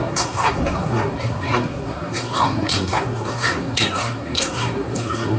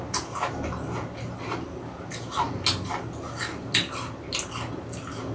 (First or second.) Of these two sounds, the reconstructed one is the first